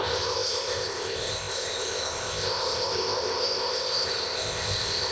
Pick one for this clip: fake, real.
fake